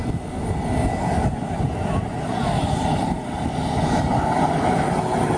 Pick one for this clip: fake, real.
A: real